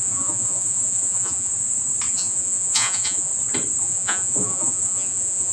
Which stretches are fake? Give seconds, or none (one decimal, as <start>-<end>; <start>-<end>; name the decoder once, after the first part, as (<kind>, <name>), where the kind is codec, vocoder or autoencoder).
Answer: 0.0-1.5 (vocoder, Vocos); 2.1-3.3; 3.8-5.5